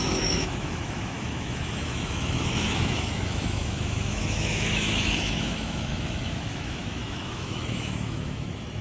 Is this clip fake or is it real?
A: fake